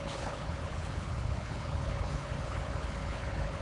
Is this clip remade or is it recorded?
remade